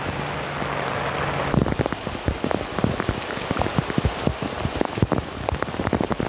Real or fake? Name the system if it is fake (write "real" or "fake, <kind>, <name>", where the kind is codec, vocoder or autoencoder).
real